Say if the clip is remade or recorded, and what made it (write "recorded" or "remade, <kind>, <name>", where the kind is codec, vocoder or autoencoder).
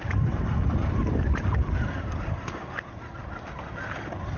remade, vocoder, BigVGAN v2